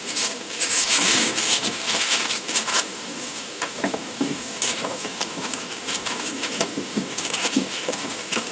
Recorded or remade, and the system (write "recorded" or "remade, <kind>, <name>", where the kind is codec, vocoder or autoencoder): remade, codec, DAC